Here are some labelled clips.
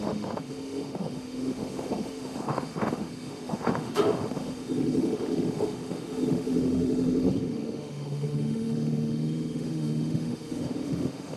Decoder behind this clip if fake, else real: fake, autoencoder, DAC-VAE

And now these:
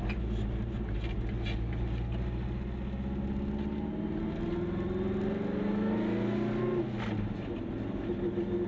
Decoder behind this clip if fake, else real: real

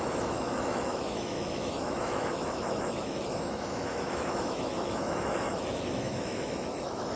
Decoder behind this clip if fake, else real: fake, autoencoder, DAC-VAE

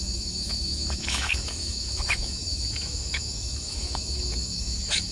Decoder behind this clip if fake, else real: fake, autoencoder, DAC-VAE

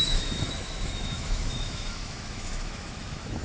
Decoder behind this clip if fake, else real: fake, autoencoder, DAC-VAE